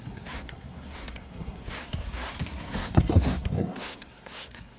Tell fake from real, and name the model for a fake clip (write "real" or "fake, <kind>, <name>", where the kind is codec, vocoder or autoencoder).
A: fake, codec, SNAC